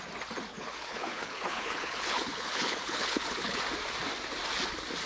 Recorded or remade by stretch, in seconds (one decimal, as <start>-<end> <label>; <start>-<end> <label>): 0.0-0.5 recorded; 0.5-3.6 remade; 3.6-5.1 recorded